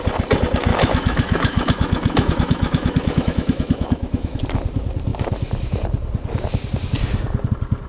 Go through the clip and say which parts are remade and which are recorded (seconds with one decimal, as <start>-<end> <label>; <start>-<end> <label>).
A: 0.0-0.7 recorded; 0.7-4.4 remade; 4.4-7.9 recorded